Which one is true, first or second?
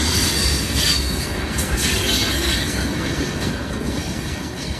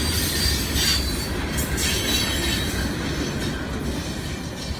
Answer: second